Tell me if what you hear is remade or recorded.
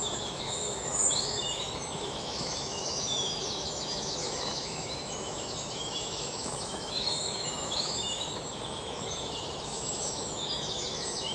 remade